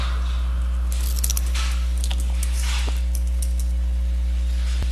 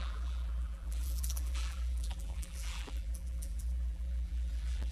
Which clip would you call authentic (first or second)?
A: first